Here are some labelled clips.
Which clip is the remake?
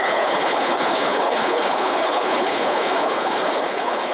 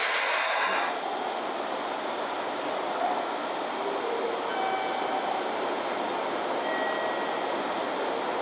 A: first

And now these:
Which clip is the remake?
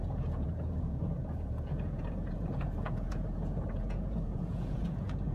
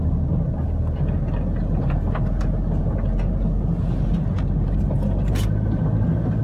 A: first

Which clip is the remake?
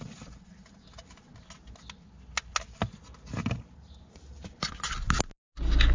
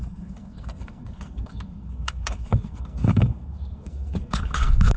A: second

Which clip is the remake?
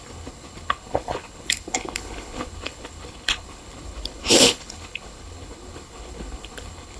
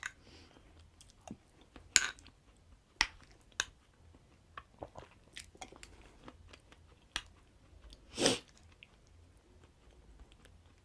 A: first